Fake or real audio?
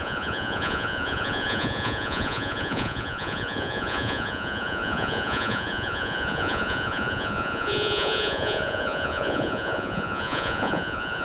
fake